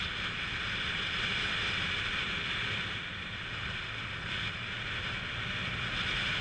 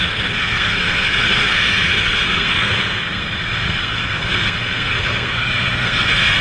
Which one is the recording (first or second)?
first